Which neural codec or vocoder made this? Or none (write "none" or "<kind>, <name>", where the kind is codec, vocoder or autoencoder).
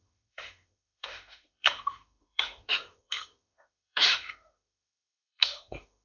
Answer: autoencoder, DAC-VAE